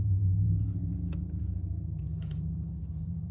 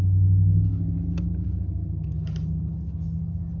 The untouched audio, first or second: second